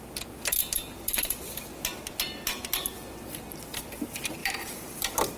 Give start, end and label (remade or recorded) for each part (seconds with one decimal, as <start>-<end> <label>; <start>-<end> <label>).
0.0-4.4 recorded; 4.4-5.0 remade; 5.0-5.4 recorded